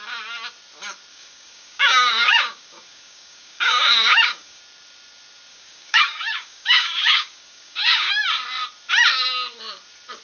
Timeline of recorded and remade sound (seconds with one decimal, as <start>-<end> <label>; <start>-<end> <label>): 0.0-1.1 recorded; 1.1-4.6 remade; 4.6-5.5 recorded; 5.5-8.1 remade; 8.1-10.2 recorded